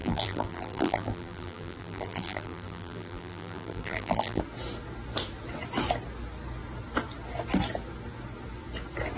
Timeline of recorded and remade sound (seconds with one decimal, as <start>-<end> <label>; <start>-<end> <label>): 0.0-4.4 remade; 4.4-9.2 recorded

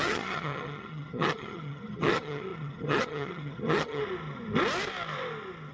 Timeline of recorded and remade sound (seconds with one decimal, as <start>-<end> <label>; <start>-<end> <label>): 0.0-4.0 remade; 4.0-5.7 recorded

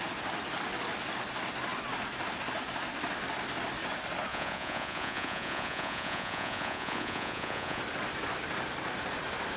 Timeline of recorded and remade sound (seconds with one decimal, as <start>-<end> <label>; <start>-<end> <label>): 0.0-4.3 recorded; 4.3-7.8 remade; 7.8-9.6 recorded

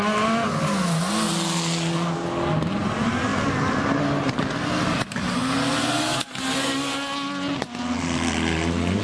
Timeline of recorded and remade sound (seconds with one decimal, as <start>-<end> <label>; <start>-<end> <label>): 0.0-9.0 recorded

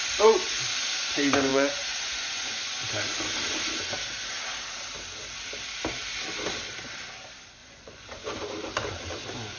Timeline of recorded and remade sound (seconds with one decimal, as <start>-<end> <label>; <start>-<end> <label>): 0.0-1.5 recorded; 1.5-2.8 remade; 2.8-7.6 recorded; 7.6-8.3 remade; 8.3-9.6 recorded

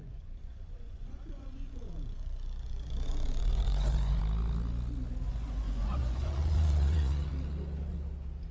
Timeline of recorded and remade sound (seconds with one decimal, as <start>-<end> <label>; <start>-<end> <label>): 0.0-4.2 remade; 4.2-5.3 recorded; 5.3-7.3 remade; 7.3-8.5 recorded